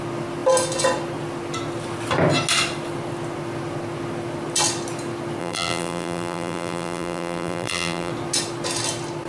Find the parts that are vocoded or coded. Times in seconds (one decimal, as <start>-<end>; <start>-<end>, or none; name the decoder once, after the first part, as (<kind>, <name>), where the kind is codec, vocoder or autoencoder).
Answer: 5.4-8.1 (vocoder, BigVGAN v2)